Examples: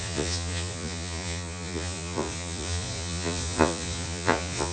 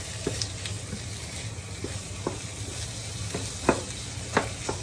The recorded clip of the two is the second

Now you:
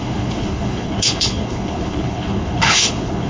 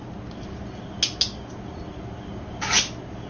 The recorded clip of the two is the second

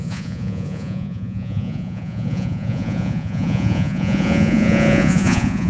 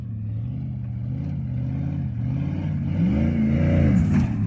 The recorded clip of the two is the second